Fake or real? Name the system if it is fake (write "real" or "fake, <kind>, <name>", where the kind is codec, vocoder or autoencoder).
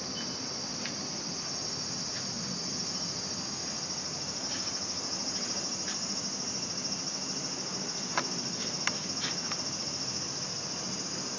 real